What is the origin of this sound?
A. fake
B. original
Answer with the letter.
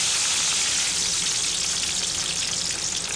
B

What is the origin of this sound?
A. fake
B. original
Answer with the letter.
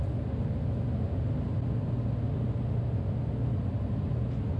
B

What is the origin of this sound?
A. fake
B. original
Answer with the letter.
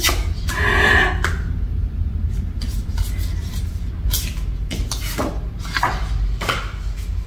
B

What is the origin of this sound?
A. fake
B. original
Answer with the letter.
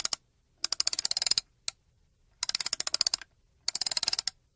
B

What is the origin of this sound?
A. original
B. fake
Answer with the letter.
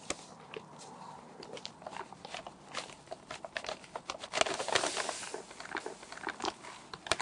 A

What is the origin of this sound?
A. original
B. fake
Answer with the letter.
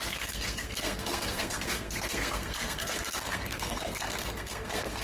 B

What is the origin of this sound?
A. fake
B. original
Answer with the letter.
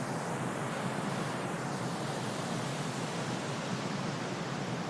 B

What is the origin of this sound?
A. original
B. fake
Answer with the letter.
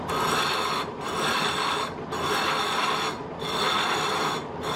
A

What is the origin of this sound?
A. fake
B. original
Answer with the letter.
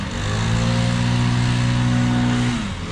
B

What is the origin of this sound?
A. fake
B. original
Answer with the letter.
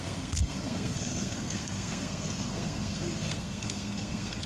A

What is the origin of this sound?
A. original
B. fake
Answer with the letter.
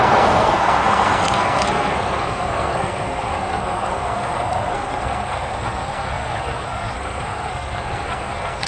B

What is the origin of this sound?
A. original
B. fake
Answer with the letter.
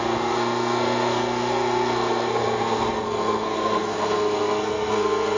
B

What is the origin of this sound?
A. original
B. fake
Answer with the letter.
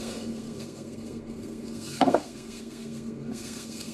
B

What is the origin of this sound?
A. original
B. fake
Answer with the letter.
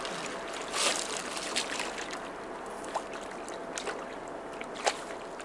A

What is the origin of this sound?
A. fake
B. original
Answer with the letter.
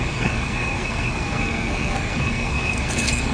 A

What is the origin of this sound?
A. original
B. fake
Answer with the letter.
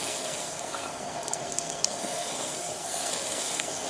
B